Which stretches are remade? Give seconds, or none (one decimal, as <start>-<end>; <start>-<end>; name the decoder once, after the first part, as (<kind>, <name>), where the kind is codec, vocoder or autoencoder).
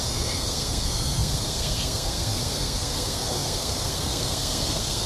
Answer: 0.0-5.1 (codec, SNAC)